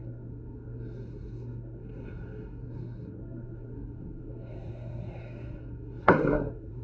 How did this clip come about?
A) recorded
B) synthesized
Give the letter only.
B